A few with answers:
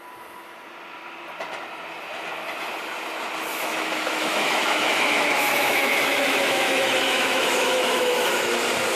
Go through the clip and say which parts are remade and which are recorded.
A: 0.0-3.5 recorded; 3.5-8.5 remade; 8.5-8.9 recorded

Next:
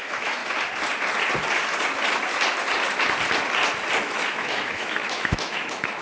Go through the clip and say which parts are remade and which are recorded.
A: 0.0-0.4 remade; 0.4-4.0 recorded; 4.0-6.0 remade

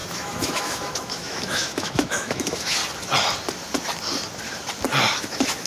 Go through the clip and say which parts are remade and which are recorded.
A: 0.0-2.8 remade; 2.8-5.2 recorded; 5.2-5.7 remade